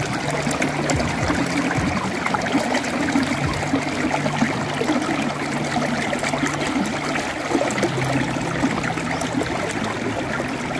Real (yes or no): yes